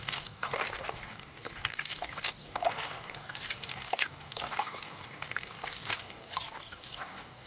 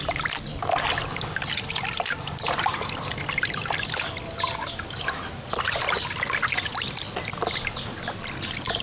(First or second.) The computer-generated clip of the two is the first